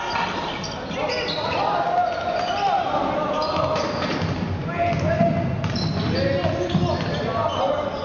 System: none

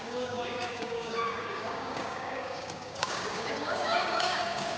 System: codec, DAC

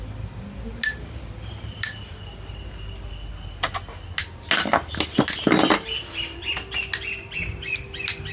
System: none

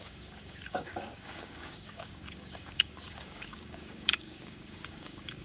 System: codec, DAC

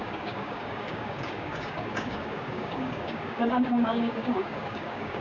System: codec, DAC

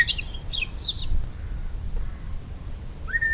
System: none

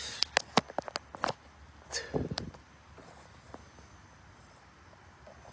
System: none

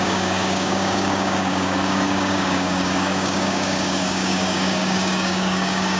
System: codec, DAC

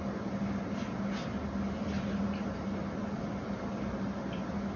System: none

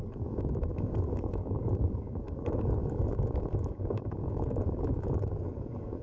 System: codec, DAC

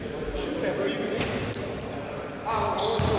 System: none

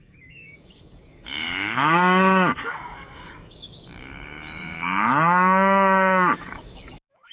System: codec, DAC